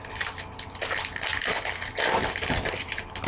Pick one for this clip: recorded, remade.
recorded